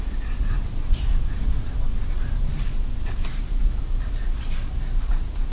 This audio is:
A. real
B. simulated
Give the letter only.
B